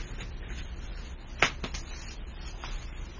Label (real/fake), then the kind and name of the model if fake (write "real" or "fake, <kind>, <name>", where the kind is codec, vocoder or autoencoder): real